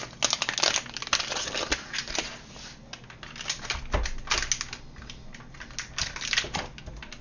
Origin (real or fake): real